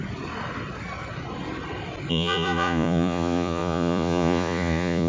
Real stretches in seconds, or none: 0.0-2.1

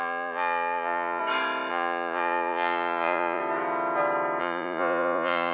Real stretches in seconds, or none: 1.2-1.7; 3.4-4.4

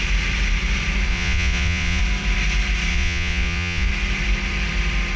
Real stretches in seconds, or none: 0.0-1.1; 2.0-2.9; 3.9-5.2

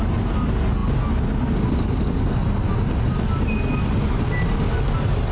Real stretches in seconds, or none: 0.0-5.3

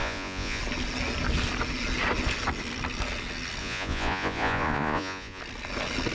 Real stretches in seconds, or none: 0.6-3.6; 5.4-6.1

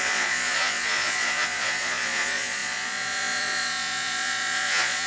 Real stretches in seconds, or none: none

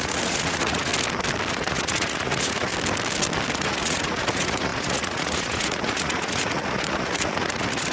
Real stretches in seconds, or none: 0.9-1.5; 2.7-3.5

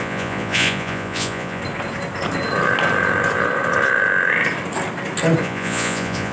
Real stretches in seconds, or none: 1.6-5.4